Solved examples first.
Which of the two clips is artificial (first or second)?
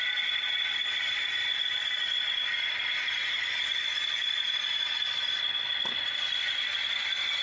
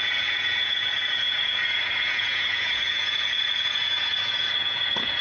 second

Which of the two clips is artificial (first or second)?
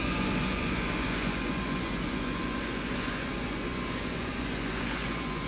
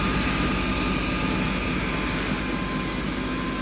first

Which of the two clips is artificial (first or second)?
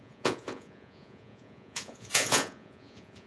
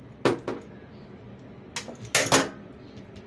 first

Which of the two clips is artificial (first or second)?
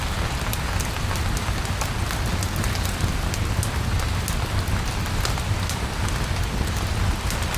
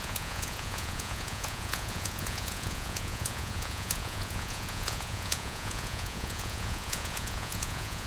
second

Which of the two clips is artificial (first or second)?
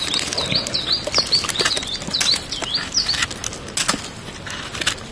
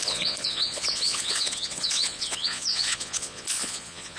second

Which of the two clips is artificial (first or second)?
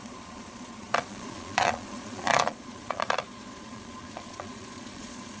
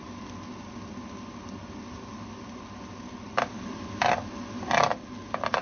first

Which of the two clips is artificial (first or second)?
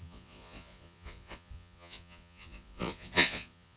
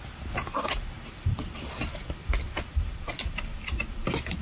first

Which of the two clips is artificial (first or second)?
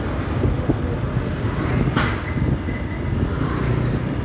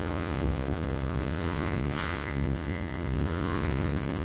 second